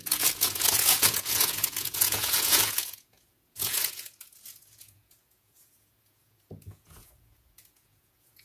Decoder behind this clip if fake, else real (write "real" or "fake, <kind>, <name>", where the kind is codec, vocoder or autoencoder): fake, vocoder, Vocos